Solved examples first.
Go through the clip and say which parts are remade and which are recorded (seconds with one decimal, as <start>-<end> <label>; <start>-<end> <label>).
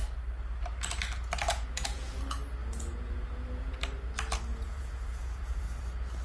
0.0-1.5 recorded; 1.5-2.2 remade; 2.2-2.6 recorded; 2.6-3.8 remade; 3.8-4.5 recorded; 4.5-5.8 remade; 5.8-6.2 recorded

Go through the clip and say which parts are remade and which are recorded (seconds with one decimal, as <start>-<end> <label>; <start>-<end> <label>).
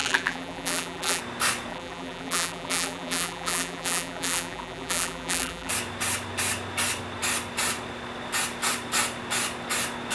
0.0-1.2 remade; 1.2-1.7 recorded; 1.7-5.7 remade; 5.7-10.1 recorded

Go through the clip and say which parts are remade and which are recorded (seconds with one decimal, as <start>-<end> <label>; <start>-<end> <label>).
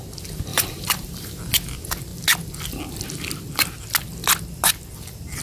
0.0-0.5 recorded; 0.5-1.4 remade; 1.4-5.4 recorded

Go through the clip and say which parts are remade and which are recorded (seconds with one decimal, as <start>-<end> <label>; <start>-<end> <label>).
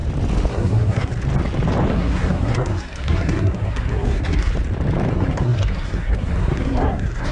0.0-0.5 recorded; 0.5-1.1 remade; 1.1-1.9 recorded; 1.9-4.5 remade; 4.5-5.1 recorded; 5.1-7.3 remade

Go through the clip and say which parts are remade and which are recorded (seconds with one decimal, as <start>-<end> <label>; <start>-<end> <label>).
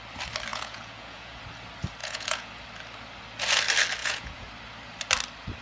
0.0-0.5 recorded; 0.5-1.4 remade; 1.4-2.0 recorded; 2.0-2.5 remade; 2.5-4.0 recorded; 4.0-4.5 remade; 4.5-5.6 recorded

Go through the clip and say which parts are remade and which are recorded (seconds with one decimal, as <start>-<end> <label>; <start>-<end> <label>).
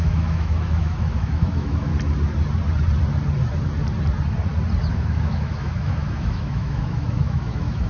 0.0-1.9 remade; 1.9-4.9 recorded; 4.9-7.9 remade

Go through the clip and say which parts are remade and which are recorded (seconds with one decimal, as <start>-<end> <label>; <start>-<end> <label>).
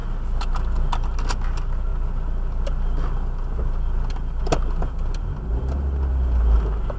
0.0-7.0 recorded